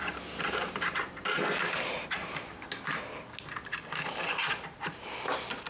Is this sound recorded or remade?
recorded